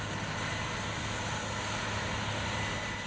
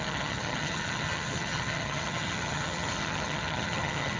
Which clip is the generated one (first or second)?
second